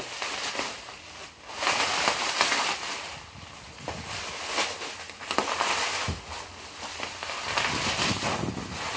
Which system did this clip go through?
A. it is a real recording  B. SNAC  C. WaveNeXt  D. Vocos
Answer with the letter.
A